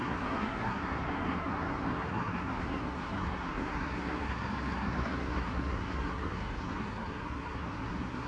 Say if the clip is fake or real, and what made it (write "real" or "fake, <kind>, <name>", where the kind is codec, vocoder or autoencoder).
fake, codec, SNAC